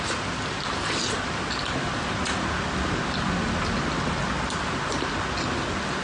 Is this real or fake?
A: real